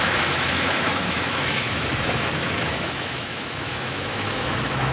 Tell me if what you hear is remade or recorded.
remade